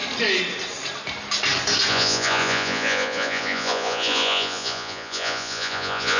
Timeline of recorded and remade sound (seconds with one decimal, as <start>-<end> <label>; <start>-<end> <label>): 0.0-1.9 recorded; 1.9-6.2 remade